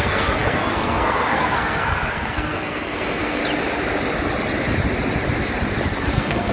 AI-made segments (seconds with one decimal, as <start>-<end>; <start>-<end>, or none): 0.0-3.4; 6.1-6.5